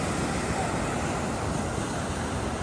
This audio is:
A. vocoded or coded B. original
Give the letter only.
A